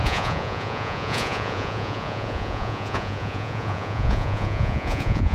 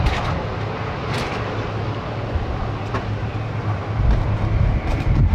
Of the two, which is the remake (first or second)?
first